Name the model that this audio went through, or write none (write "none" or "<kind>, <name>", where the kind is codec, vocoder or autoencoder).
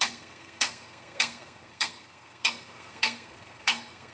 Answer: codec, SNAC